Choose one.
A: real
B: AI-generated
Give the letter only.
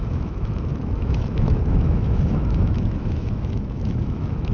B